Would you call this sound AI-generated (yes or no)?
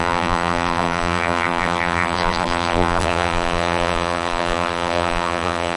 yes